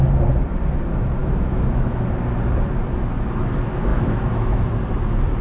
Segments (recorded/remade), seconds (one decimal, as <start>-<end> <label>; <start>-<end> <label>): 0.0-1.2 recorded; 1.2-2.0 remade; 2.0-3.9 recorded; 3.9-4.6 remade; 4.6-5.4 recorded